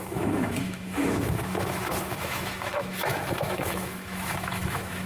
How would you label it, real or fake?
fake